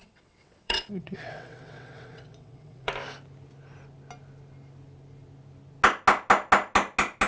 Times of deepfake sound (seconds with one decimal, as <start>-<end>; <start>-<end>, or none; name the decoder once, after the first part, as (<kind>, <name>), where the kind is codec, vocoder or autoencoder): 0.0-2.9 (vocoder, WaveNeXt)